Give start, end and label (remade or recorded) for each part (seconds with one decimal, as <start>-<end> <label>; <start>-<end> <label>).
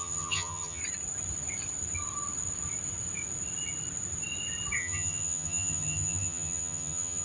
0.0-0.8 remade; 0.8-4.8 recorded; 4.8-7.2 remade